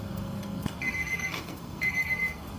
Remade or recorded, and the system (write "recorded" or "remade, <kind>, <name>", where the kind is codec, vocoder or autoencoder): remade, codec, SNAC